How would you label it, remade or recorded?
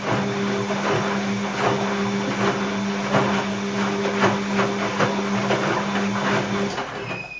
recorded